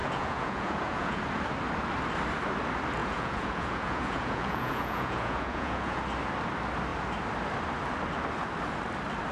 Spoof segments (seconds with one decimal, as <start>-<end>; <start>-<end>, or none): 0.0-1.2; 3.0-6.0